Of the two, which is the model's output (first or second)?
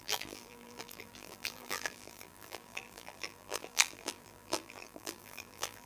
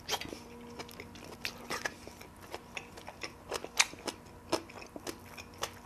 first